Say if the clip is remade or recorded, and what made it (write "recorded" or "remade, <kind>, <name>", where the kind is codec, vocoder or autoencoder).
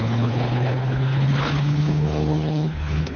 remade, codec, HILCodec